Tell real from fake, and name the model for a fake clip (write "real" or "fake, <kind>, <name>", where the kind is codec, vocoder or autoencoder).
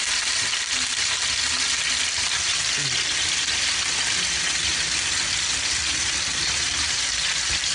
real